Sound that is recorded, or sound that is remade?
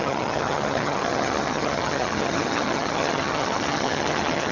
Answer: remade